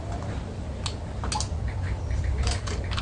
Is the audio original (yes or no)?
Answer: yes